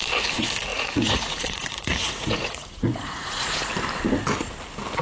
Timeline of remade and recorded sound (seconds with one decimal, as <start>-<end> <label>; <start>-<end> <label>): 0.0-0.7 recorded; 0.7-3.7 remade; 3.7-5.0 recorded